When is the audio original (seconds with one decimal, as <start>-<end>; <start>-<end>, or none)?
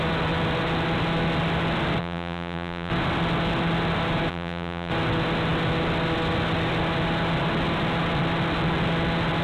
0.0-2.0; 2.9-4.3; 4.9-9.4